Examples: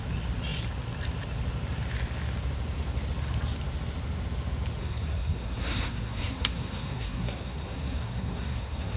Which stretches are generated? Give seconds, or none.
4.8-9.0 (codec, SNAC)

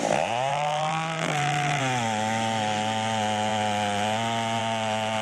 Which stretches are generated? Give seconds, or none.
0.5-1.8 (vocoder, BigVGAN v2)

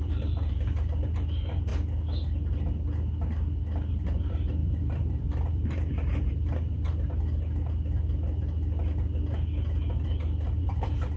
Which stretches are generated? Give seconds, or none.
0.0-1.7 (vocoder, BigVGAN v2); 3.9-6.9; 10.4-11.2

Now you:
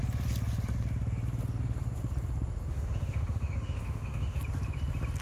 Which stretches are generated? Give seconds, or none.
2.7-4.4 (autoencoder, DAC-VAE)

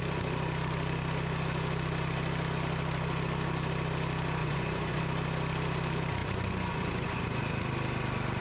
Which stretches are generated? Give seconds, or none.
4.4-5.0 (vocoder, Vocos); 6.2-7.4